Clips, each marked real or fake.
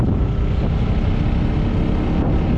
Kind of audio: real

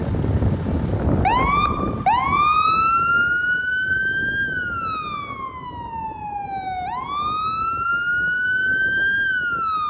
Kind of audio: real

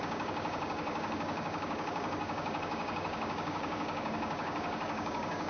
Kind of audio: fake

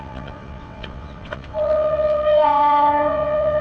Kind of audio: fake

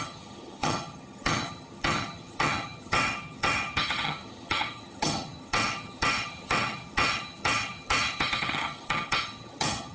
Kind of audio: fake